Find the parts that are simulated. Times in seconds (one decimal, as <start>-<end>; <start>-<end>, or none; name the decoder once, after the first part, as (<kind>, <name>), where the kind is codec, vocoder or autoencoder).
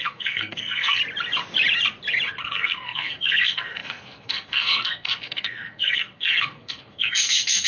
0.0-1.0 (codec, SNAC); 2.4-7.7